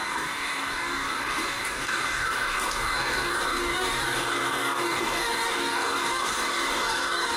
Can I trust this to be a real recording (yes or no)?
no